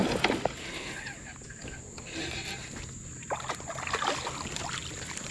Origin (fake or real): real